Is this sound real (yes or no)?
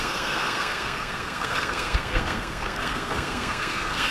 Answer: no